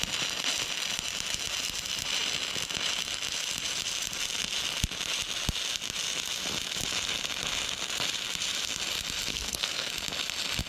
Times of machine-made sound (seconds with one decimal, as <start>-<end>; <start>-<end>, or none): 9.3-9.9